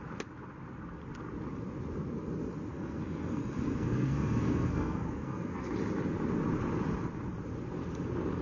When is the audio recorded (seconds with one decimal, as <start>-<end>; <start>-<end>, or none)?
0.0-2.7; 5.7-8.4